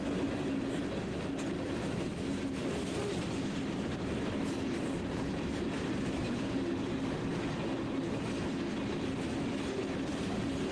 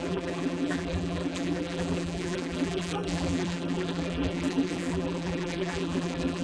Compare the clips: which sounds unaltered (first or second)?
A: first